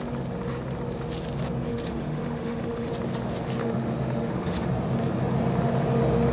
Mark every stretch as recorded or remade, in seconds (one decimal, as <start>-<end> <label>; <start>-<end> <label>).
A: 0.0-1.7 recorded; 1.7-2.9 remade; 2.9-3.6 recorded; 3.6-4.7 remade; 4.7-6.3 recorded

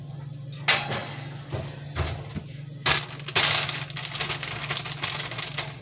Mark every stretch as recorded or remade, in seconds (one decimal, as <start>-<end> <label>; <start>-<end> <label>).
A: 0.0-5.8 recorded

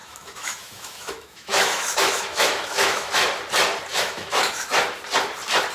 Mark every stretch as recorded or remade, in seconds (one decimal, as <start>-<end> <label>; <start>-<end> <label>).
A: 0.0-3.1 remade; 3.1-3.9 recorded; 3.9-4.7 remade; 4.7-5.7 recorded

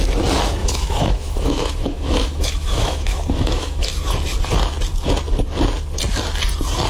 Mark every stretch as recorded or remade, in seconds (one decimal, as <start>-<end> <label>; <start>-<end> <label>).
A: 0.0-0.6 recorded; 0.6-3.9 remade; 3.9-6.9 recorded